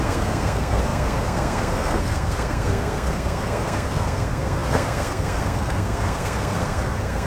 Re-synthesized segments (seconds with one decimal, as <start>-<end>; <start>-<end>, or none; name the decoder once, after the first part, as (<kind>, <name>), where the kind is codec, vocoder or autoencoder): 0.0-7.3 (codec, SNAC)